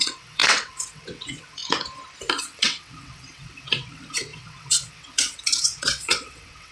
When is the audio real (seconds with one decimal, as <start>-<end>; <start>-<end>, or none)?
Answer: 1.6-2.4